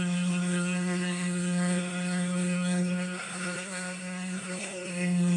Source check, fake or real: fake